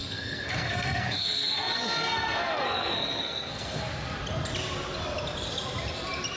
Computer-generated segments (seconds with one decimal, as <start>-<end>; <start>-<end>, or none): 0.0-3.8